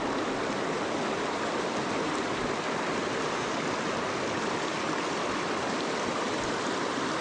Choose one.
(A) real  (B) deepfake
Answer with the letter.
A